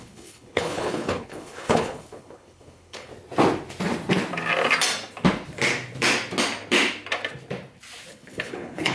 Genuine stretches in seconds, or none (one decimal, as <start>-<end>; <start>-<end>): 3.1-8.1